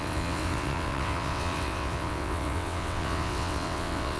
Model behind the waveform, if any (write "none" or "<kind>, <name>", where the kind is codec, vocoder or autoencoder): vocoder, WaveNeXt